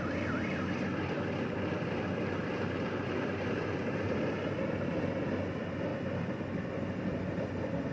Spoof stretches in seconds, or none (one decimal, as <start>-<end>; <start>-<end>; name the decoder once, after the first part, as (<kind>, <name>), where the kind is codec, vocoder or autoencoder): 2.4-4.6 (vocoder, BigVGAN v2)